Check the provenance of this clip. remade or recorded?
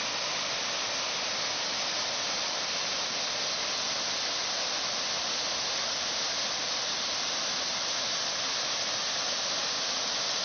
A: recorded